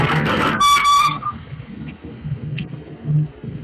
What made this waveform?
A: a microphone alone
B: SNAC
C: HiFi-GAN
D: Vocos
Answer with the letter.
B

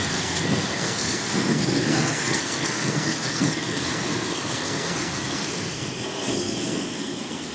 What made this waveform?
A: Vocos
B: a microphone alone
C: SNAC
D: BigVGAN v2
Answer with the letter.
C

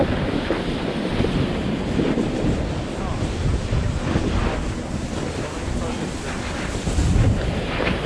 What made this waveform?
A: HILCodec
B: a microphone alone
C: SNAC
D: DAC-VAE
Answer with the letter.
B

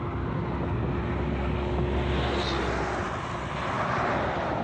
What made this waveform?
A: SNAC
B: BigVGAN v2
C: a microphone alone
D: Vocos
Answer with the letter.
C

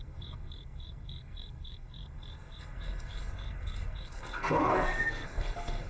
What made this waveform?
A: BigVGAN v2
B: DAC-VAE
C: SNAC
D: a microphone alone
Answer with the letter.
C